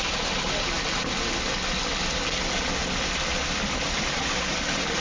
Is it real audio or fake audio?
real